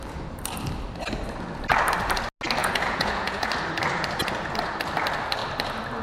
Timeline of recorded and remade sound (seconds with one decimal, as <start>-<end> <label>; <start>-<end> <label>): 0.0-2.6 recorded; 2.6-3.5 remade; 3.5-6.0 recorded